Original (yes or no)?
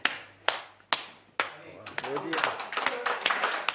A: yes